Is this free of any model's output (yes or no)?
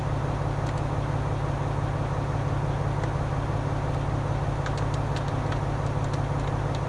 yes